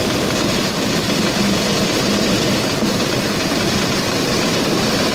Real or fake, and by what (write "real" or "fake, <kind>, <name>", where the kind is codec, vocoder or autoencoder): fake, vocoder, BigVGAN v2